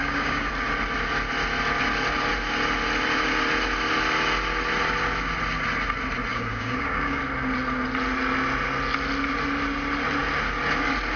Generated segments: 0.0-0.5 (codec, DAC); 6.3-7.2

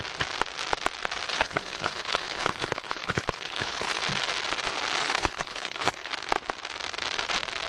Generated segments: 1.3-4.0 (codec, HILCodec); 5.0-6.1